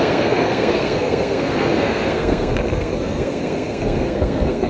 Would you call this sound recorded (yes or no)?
no